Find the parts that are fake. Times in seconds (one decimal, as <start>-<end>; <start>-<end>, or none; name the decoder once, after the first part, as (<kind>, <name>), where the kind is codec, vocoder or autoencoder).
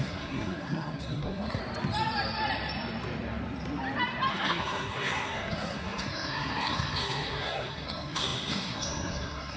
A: 0.0-1.6 (codec, SNAC); 4.3-9.6